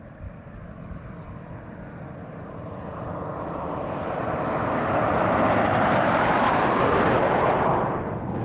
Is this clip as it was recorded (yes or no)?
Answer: no